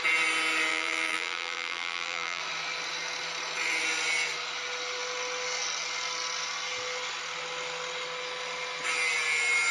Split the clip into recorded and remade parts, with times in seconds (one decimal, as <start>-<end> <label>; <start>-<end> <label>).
0.0-0.7 recorded; 0.7-2.4 remade; 2.4-9.7 recorded

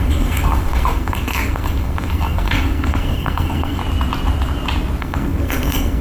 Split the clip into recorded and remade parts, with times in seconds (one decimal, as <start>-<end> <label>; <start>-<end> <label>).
0.0-3.8 remade; 3.8-5.0 recorded; 5.0-6.0 remade

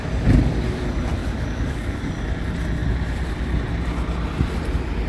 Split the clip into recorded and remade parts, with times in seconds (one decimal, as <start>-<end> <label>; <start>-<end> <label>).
0.0-1.2 recorded; 1.2-2.1 remade; 2.1-5.1 recorded

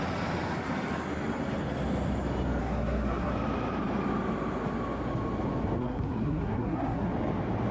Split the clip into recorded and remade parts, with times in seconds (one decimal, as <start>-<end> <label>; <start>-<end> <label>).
0.0-2.6 recorded; 2.6-3.3 remade; 3.3-5.8 recorded; 5.8-7.1 remade; 7.1-7.7 recorded

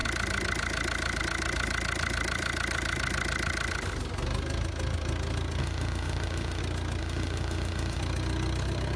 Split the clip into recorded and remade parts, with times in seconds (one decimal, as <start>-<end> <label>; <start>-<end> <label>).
0.0-5.6 recorded; 5.6-6.6 remade; 6.6-7.0 recorded; 7.0-8.0 remade; 8.0-9.0 recorded

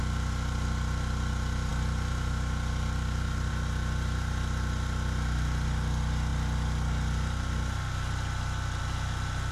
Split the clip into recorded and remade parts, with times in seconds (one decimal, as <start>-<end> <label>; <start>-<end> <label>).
0.0-9.5 recorded

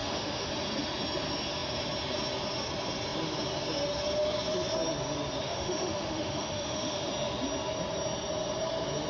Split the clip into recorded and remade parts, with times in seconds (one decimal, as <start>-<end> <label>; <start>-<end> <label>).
0.0-0.5 remade; 0.5-5.4 recorded; 5.4-7.1 remade; 7.1-9.1 recorded

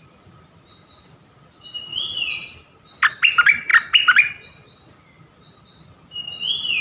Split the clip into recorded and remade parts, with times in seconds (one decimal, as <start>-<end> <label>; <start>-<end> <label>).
0.0-6.8 recorded